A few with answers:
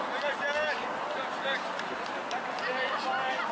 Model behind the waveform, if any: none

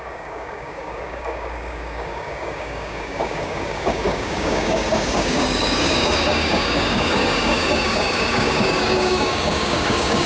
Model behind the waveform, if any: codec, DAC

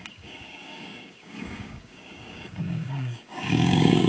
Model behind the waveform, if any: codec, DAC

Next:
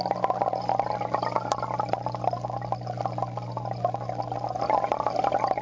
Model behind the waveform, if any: none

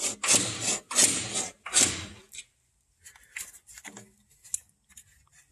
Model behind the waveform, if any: none